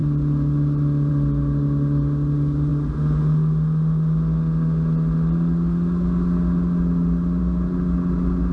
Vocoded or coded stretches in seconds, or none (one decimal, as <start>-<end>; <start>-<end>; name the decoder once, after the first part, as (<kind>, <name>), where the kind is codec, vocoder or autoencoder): none